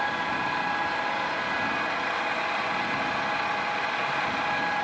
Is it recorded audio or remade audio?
recorded